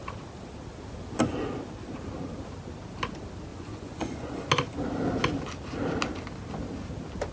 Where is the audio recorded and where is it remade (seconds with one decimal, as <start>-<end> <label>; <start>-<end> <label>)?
0.0-3.5 recorded; 3.5-4.5 remade; 4.5-7.3 recorded